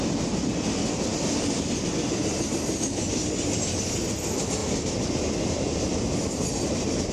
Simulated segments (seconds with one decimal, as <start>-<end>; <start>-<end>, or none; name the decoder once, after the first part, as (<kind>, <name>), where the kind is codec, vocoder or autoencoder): none